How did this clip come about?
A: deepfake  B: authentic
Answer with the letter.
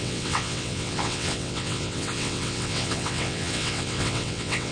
A